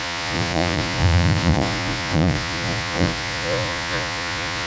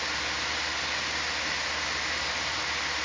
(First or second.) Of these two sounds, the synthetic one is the first